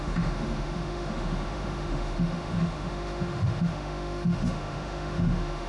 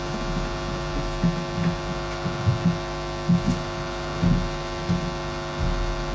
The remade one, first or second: first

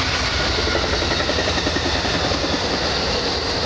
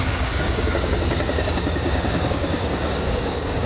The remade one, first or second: second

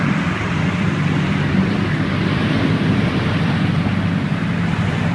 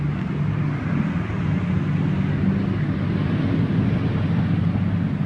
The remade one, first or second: first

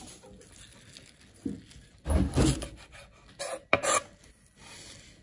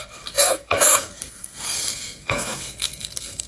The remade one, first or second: second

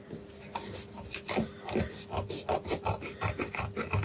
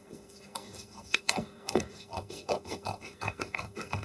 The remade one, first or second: second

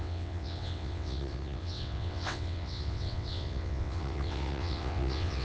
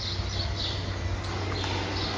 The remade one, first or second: first